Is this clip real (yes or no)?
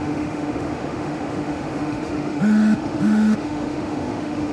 no